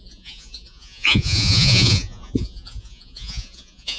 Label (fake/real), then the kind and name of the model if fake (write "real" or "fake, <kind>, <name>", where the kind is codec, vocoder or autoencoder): fake, vocoder, Vocos